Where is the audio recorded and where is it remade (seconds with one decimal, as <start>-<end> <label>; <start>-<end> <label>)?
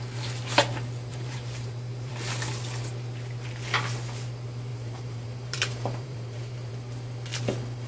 0.0-1.1 recorded; 1.1-2.1 remade; 2.1-4.7 recorded; 4.7-6.7 remade; 6.7-7.9 recorded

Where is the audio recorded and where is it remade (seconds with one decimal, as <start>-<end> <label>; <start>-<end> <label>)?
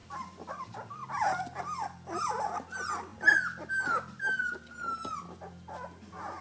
0.0-0.5 remade; 0.5-1.0 recorded; 1.0-1.6 remade; 1.6-3.1 recorded; 3.1-3.7 remade; 3.7-6.4 recorded